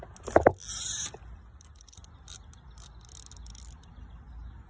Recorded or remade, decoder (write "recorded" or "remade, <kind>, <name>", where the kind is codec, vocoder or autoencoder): recorded